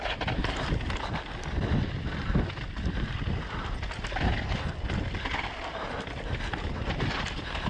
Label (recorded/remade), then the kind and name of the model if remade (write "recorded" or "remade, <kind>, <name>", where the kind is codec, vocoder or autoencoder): recorded